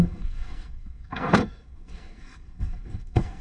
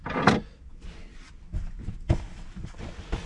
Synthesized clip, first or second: first